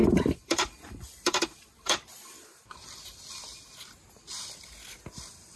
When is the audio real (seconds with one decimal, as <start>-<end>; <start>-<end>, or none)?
3.4-5.6